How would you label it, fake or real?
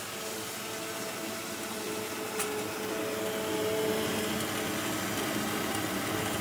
real